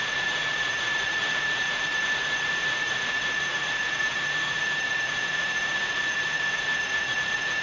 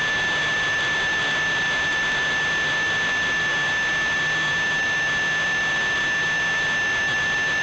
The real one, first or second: second